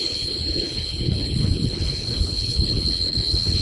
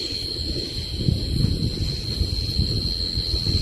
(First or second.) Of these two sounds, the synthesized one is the first